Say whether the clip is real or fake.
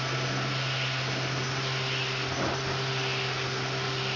real